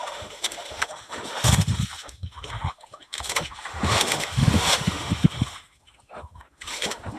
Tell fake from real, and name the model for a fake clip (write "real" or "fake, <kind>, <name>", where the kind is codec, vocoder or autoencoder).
fake, autoencoder, DAC-VAE